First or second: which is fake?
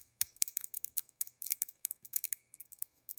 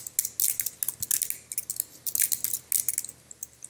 first